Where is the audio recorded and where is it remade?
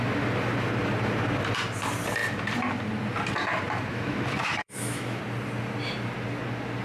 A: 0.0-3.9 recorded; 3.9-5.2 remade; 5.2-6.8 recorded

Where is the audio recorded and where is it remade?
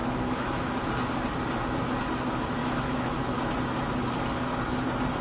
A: 0.0-0.8 remade; 0.8-2.6 recorded; 2.6-3.2 remade; 3.2-5.2 recorded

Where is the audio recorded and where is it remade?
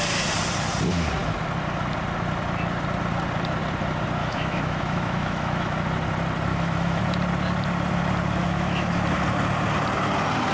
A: 0.0-4.2 recorded; 4.2-5.8 remade; 5.8-6.5 recorded; 6.5-7.0 remade; 7.0-8.4 recorded; 8.4-8.9 remade; 8.9-10.5 recorded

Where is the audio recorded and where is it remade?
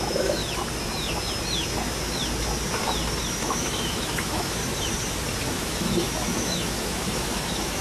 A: 0.0-0.4 remade; 0.4-3.4 recorded; 3.4-4.6 remade; 4.6-5.5 recorded; 5.5-7.8 remade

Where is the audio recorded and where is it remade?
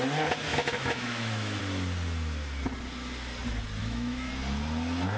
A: 0.0-0.5 recorded; 0.5-1.6 remade; 1.6-3.8 recorded; 3.8-4.3 remade; 4.3-5.2 recorded